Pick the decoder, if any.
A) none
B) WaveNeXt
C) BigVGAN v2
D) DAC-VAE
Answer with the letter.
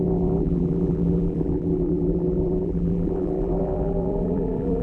C